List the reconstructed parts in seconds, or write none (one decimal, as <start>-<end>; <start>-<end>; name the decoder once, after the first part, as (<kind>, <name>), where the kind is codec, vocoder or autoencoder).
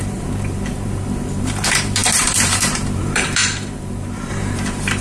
0.0-5.0 (vocoder, BigVGAN v2)